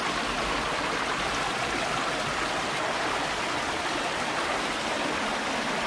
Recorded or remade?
recorded